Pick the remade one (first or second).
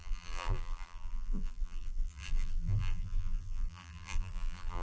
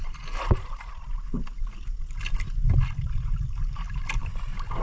first